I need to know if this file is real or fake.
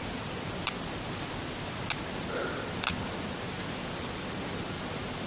real